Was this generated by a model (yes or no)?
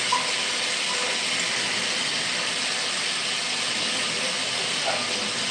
no